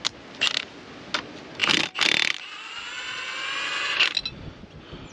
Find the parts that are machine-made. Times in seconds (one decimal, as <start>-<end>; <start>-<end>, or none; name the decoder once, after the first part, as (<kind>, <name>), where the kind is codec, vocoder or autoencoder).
none